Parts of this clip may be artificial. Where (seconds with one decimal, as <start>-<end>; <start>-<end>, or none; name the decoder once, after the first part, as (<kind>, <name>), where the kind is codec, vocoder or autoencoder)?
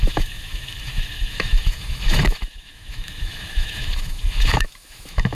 0.0-5.3 (autoencoder, DAC-VAE)